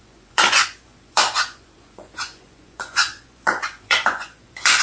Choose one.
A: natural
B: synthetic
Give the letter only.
B